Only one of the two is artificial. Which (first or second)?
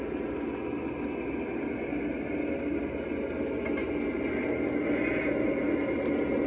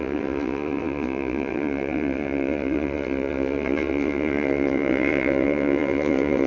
second